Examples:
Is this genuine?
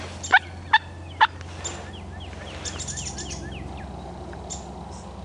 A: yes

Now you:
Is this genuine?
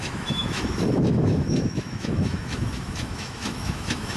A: no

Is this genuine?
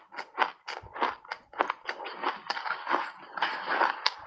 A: yes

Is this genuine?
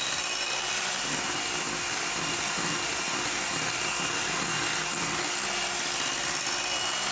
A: yes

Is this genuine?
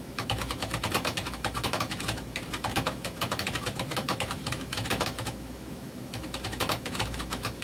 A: no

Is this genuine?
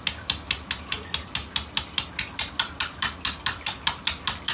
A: yes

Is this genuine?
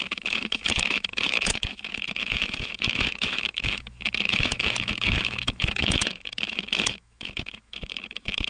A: no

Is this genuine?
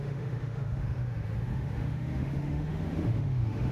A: no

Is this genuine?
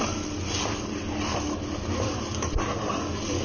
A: yes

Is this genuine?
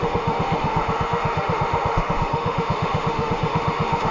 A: no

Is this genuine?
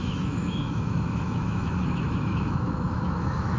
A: no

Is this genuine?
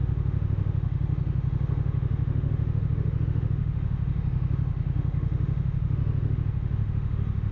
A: no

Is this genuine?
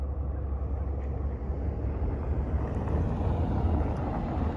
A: yes